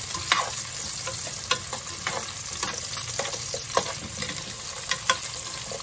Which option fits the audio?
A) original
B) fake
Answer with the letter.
A